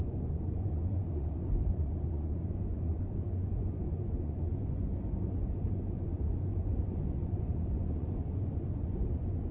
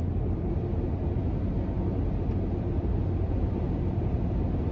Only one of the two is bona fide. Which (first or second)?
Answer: second